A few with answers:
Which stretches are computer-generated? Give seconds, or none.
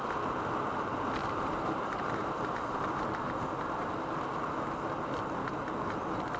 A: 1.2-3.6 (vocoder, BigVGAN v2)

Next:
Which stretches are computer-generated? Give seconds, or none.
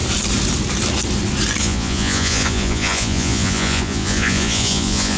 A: 1.6-5.2 (vocoder, Vocos)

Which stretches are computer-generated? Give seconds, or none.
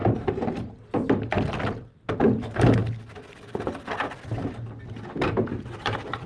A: none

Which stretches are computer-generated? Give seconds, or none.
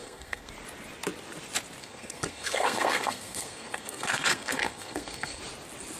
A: 0.0-0.5 (codec, SNAC); 1.8-5.4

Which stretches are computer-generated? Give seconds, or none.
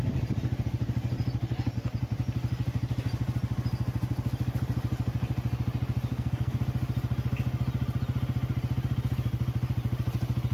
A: 6.1-6.6 (codec, SNAC)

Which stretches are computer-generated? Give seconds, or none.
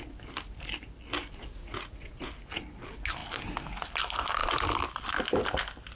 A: 1.5-2.3 (vocoder, Vocos)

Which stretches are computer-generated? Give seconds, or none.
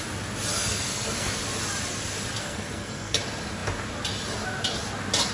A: 0.5-1.3 (codec, SNAC); 2.4-3.2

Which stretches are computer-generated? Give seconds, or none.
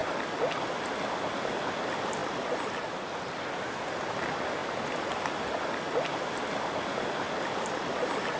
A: 4.6-6.1 (vocoder, BigVGAN v2)